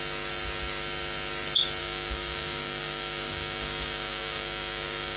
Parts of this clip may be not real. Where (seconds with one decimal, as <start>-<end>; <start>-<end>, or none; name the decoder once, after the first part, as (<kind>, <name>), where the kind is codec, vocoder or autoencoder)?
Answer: 1.8-5.2 (codec, DAC)